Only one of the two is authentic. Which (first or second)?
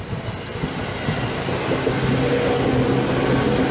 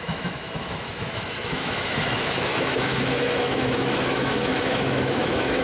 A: first